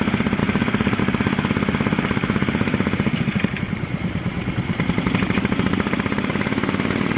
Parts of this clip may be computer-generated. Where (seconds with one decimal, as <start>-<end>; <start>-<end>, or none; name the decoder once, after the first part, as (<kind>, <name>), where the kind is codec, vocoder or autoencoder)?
0.4-1.0 (vocoder, BigVGAN v2); 2.2-6.3